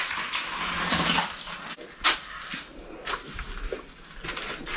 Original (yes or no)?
yes